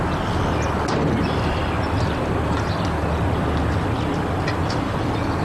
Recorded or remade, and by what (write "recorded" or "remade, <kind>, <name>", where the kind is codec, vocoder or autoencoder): recorded